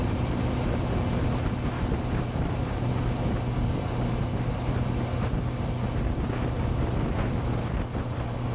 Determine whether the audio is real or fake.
real